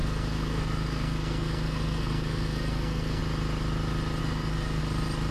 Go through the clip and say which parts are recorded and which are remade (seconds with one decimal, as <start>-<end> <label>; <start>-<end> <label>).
0.0-3.2 remade; 3.2-4.2 recorded; 4.2-4.8 remade; 4.8-5.3 recorded